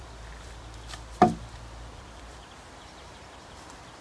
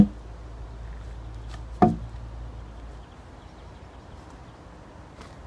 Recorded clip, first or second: second